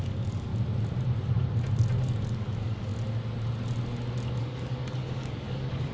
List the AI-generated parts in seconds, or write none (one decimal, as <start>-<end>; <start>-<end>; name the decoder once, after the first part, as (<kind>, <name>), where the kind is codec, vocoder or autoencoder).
0.0-0.5 (codec, DAC); 2.0-2.9; 4.4-5.9